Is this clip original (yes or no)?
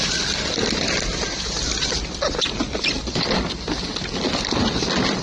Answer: yes